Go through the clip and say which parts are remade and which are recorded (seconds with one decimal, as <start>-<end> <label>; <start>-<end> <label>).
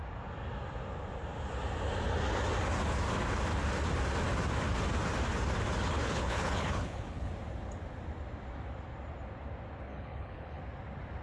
0.0-5.8 recorded; 5.8-7.3 remade; 7.3-9.9 recorded; 9.9-10.6 remade; 10.6-11.2 recorded